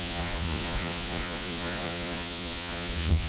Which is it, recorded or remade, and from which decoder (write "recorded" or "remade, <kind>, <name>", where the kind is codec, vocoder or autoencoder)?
remade, vocoder, Vocos